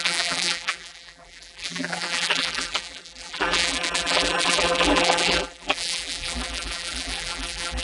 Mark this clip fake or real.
fake